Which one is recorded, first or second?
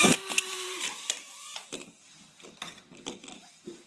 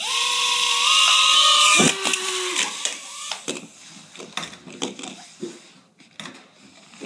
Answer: second